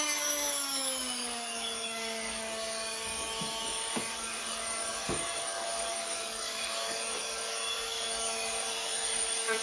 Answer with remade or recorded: remade